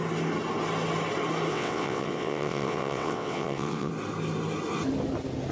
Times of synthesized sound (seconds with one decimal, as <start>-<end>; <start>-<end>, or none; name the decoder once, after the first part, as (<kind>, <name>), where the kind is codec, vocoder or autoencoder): 1.5-3.9 (vocoder, WaveNeXt)